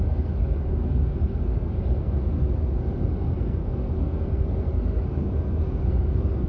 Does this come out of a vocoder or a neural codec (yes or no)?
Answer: yes